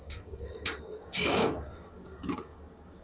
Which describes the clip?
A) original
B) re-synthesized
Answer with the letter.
B